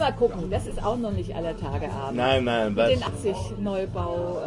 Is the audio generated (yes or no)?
no